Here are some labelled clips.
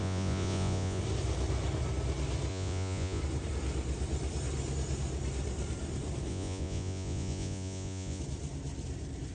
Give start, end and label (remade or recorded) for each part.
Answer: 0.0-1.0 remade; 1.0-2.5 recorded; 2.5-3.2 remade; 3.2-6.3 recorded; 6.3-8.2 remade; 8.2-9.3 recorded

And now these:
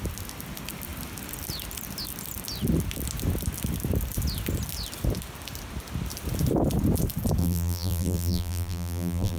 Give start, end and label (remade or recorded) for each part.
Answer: 0.0-7.4 recorded; 7.4-9.4 remade

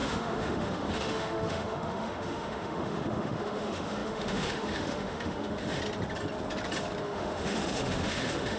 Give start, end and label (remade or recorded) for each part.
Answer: 0.0-5.8 remade; 5.8-7.0 recorded; 7.0-8.6 remade

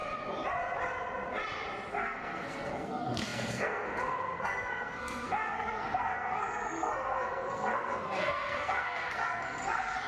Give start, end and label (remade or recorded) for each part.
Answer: 0.0-1.9 recorded; 1.9-10.1 remade

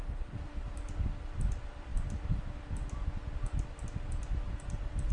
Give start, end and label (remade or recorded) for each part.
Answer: 0.0-5.1 recorded

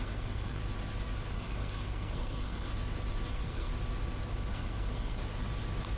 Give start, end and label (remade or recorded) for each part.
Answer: 0.0-0.6 remade; 0.6-1.3 recorded; 1.3-2.7 remade; 2.7-3.3 recorded; 3.3-3.7 remade; 3.7-4.5 recorded; 4.5-5.2 remade; 5.2-6.0 recorded

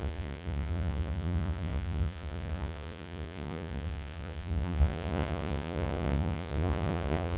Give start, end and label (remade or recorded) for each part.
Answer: 0.0-7.4 remade

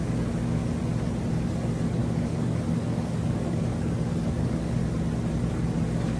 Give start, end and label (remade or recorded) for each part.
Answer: 0.0-0.6 remade; 0.6-1.3 recorded; 1.3-4.8 remade; 4.8-5.5 recorded; 5.5-6.2 remade